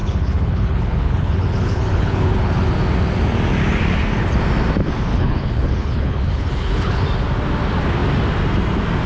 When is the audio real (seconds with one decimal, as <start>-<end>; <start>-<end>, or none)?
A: 2.5-5.1; 7.0-9.1